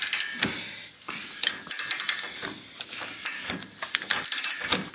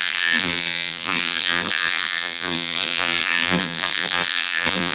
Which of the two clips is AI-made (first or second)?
second